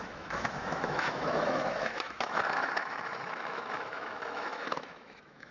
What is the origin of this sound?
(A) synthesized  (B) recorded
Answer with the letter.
A